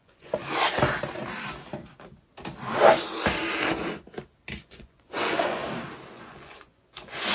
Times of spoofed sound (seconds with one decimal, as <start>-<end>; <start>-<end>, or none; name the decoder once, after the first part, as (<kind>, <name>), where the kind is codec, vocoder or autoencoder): 0.0-0.4 (vocoder, Vocos); 4.6-5.6; 6.1-7.3